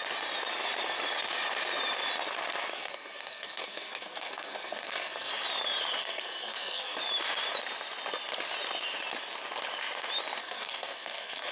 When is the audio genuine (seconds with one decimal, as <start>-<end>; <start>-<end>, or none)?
0.0-2.7; 5.3-6.0; 7.0-10.4

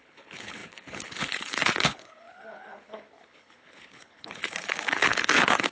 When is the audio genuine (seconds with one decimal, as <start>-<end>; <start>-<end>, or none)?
none

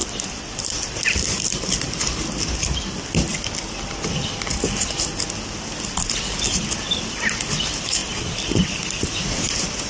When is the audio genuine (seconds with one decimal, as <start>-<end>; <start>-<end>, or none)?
2.0-8.0; 9.0-9.9

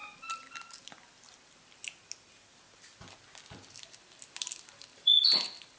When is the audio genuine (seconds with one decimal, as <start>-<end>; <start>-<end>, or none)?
0.0-3.5